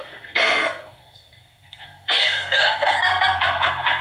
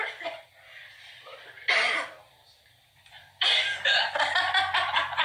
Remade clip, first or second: first